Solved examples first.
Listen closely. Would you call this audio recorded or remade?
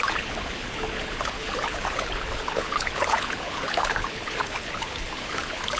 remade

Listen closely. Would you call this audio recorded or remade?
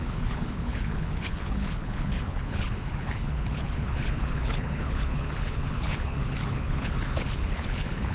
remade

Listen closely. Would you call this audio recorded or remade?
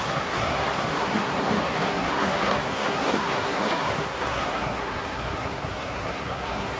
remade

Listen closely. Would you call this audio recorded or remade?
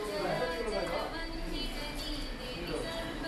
recorded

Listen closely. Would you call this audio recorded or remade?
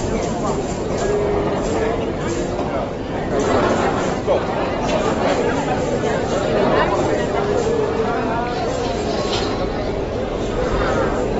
recorded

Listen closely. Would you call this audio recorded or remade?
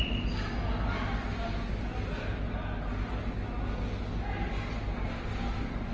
recorded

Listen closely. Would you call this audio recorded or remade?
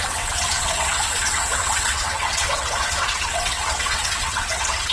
remade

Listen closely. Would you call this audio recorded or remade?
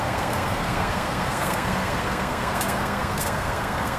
remade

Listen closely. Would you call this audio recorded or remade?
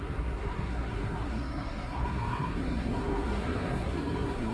remade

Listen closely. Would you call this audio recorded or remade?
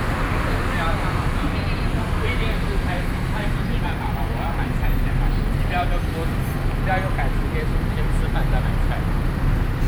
recorded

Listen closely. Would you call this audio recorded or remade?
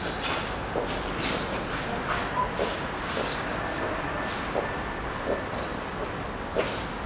recorded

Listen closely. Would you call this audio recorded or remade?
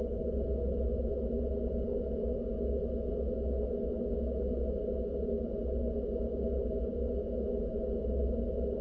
recorded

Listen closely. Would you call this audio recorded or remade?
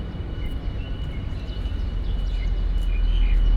recorded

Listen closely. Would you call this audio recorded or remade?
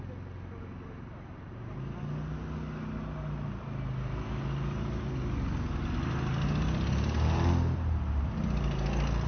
recorded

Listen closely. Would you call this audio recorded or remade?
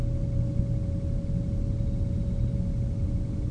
recorded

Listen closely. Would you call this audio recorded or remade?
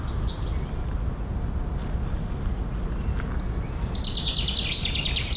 recorded